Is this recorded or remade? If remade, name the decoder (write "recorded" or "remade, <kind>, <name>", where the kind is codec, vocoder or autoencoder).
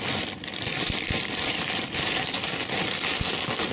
remade, vocoder, BigVGAN v2